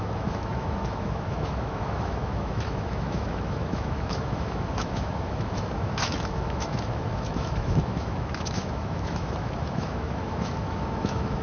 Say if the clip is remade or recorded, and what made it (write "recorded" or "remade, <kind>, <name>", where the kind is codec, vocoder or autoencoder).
remade, autoencoder, DAC-VAE